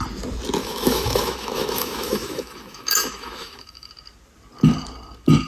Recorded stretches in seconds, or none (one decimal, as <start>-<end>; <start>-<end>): 0.0-0.6; 3.9-5.5